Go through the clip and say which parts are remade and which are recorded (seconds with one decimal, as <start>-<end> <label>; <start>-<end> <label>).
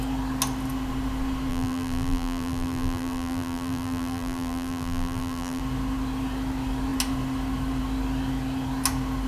0.0-1.5 recorded; 1.5-5.6 remade; 5.6-9.3 recorded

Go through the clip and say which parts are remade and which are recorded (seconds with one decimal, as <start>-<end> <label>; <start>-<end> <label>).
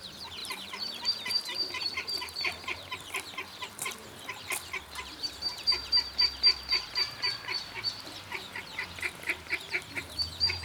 0.0-10.6 remade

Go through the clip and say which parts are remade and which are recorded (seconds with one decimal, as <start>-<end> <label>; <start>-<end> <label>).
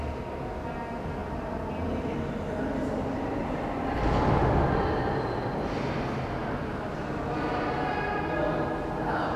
0.0-9.4 recorded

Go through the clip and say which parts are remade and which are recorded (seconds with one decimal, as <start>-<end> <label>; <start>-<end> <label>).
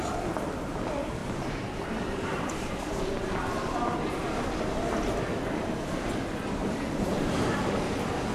0.0-1.2 recorded; 1.2-2.8 remade; 2.8-6.6 recorded; 6.6-8.3 remade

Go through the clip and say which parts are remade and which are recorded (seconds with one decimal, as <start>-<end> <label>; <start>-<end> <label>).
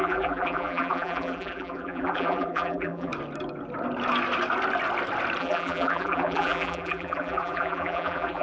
0.0-3.1 remade; 3.1-5.4 recorded; 5.4-8.4 remade